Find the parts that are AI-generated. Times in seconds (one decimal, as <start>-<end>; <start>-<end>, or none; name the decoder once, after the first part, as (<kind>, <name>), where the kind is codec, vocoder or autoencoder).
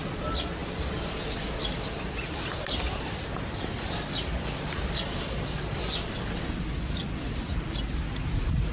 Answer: none